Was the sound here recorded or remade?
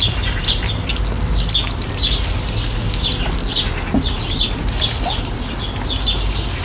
recorded